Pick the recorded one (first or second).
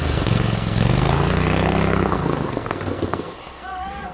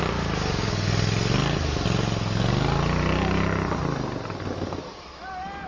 second